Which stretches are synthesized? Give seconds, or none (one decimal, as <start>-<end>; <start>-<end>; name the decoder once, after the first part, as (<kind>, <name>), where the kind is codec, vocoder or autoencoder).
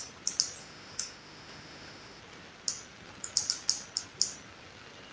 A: 0.6-2.2 (autoencoder, DAC-VAE)